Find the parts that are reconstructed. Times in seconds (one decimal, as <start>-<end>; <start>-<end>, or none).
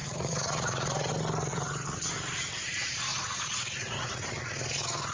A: 0.0-1.1; 1.5-2.1; 3.1-4.3